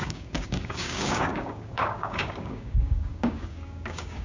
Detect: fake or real fake